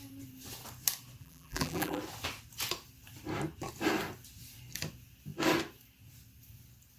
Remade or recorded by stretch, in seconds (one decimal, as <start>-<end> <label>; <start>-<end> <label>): 0.0-1.2 recorded; 1.2-2.0 remade; 2.0-7.0 recorded